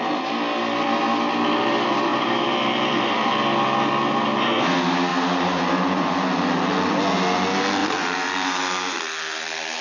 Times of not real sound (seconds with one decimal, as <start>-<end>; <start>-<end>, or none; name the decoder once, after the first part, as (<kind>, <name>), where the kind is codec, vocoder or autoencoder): 2.1-3.2 (vocoder, BigVGAN v2); 5.1-7.0; 7.8-8.6